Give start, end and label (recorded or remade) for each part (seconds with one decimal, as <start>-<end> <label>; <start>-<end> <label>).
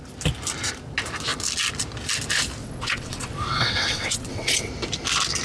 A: 0.0-2.6 recorded; 2.6-4.7 remade; 4.7-5.4 recorded